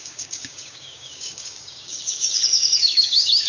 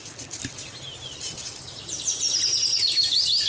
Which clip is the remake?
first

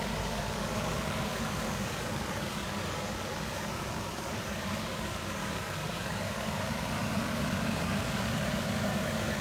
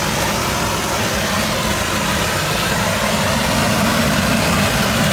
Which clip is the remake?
first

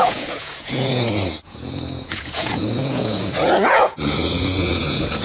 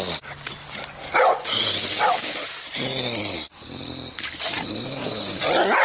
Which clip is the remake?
first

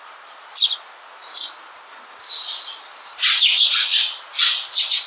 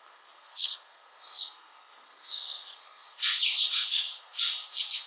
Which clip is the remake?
second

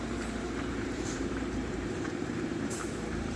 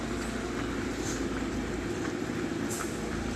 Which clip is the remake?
first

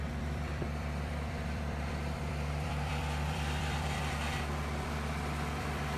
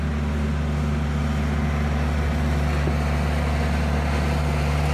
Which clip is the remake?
first